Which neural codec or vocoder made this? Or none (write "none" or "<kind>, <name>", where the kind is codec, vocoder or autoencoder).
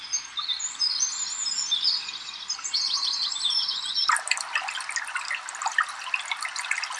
none